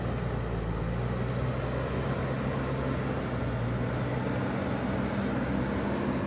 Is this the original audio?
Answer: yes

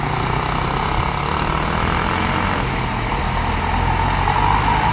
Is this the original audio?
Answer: yes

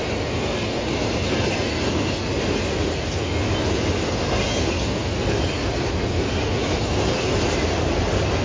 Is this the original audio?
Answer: yes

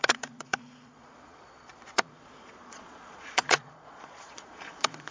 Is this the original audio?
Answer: no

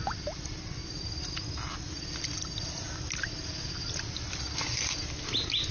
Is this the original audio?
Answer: yes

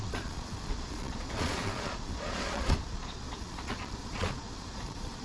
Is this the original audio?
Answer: no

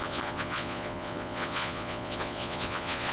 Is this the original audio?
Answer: no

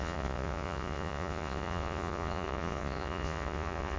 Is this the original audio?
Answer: no